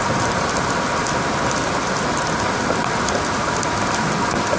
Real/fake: real